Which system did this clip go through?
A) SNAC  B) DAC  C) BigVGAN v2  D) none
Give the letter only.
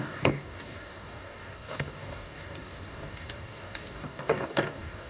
B